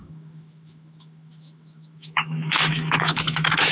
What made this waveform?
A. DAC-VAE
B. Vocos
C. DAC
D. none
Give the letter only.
A